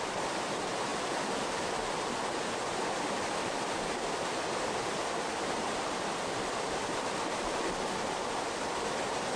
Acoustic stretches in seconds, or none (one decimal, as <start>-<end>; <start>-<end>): none